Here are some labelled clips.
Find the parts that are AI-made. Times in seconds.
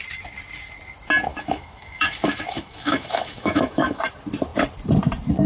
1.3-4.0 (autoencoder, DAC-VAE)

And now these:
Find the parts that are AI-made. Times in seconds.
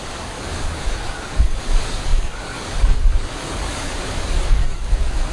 0.0-5.3 (codec, DAC)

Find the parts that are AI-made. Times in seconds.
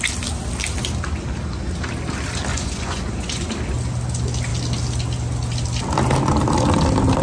2.5-3.5 (vocoder, Vocos)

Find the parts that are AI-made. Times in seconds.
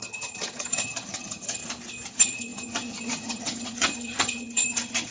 0.0-1.6 (vocoder, HiFi-GAN); 2.1-5.1